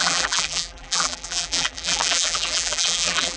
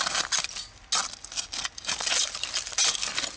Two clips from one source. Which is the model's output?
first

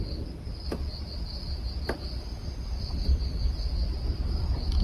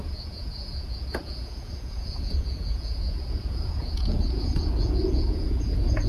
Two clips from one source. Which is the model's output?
second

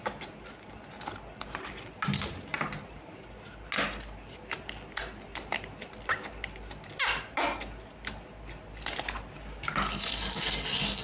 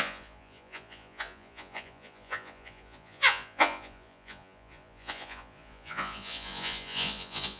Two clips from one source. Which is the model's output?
second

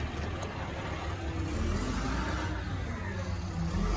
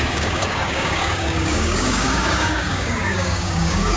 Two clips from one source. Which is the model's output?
second